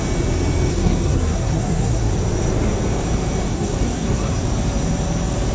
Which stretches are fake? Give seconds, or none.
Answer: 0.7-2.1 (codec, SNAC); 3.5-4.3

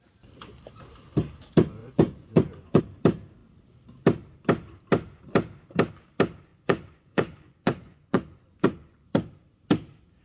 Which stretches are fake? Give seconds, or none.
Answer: 1.8-2.8 (vocoder, Vocos); 6.5-9.1

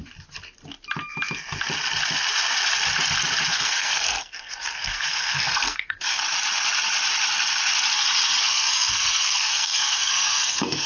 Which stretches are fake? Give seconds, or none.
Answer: 3.5-6.2 (codec, SNAC); 8.4-10.9

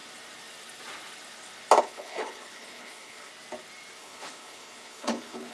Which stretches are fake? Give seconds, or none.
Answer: 1.8-3.3 (codec, HILCodec); 4.0-5.5